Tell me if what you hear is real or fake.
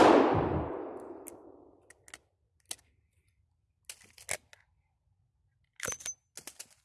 real